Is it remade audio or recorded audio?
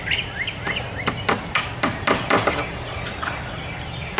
recorded